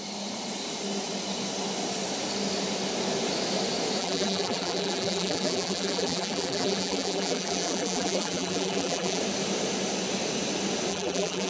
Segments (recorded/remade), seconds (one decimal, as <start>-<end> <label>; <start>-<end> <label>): 0.0-4.0 recorded; 4.0-9.2 remade; 9.2-10.9 recorded; 10.9-11.5 remade